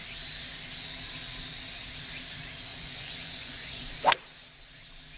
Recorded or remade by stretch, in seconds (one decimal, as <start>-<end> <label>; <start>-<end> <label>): 0.0-2.7 recorded; 2.7-3.9 remade; 3.9-5.2 recorded